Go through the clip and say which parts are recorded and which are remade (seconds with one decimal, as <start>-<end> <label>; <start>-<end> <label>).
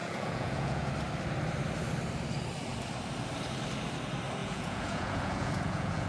0.0-0.9 remade; 0.9-4.4 recorded; 4.4-6.1 remade